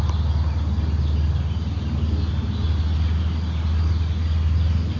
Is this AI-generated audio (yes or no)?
no